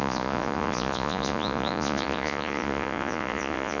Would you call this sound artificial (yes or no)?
yes